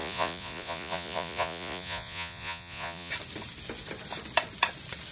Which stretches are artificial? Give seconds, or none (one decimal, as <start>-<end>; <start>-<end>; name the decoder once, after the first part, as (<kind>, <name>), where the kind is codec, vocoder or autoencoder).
0.0-3.1 (vocoder, Vocos)